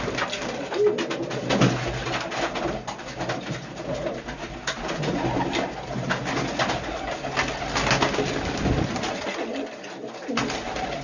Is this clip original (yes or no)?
yes